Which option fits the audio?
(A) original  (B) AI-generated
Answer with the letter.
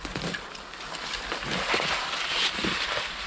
A